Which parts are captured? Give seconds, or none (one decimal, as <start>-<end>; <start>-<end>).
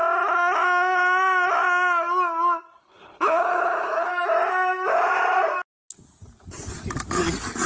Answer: 0.0-2.8; 4.1-7.7